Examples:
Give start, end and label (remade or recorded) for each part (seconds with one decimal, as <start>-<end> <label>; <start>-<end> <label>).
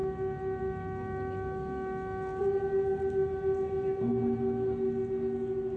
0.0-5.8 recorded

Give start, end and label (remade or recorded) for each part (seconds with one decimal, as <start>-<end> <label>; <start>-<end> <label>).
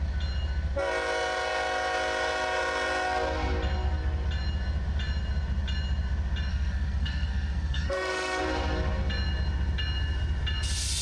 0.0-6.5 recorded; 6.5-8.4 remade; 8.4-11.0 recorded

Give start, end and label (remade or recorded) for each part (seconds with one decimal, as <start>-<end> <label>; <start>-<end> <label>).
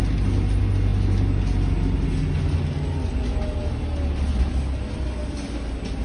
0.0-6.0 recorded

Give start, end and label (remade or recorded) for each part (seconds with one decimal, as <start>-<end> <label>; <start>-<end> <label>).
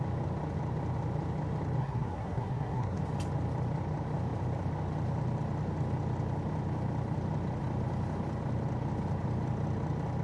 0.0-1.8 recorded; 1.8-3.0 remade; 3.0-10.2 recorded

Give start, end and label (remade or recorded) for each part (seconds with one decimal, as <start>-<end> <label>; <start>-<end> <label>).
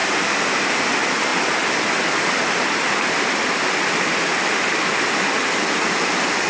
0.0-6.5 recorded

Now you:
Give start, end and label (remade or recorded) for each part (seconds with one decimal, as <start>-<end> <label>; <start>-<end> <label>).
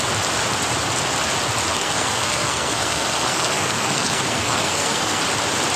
0.0-1.7 recorded; 1.7-5.2 remade; 5.2-5.8 recorded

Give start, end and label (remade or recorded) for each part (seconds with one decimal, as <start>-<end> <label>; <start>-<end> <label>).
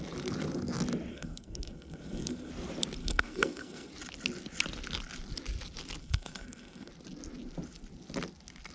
0.0-1.1 recorded; 1.1-2.5 remade; 2.5-3.0 recorded; 3.0-3.9 remade; 3.9-6.0 recorded; 6.0-6.9 remade; 6.9-8.7 recorded